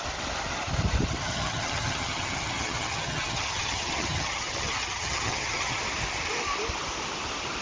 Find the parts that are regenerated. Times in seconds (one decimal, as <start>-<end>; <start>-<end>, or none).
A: 1.2-5.8